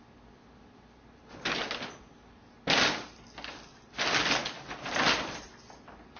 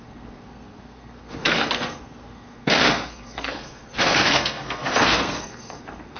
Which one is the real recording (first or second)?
first